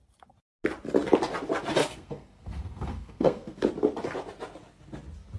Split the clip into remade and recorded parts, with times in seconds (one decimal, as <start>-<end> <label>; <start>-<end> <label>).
0.0-1.8 recorded; 1.8-3.6 remade; 3.6-5.4 recorded